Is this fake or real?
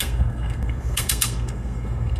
fake